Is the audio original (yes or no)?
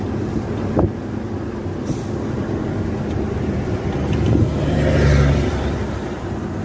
no